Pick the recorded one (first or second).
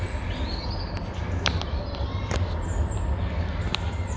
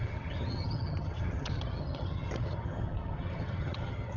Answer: first